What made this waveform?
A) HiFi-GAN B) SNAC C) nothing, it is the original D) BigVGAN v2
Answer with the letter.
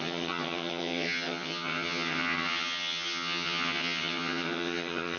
A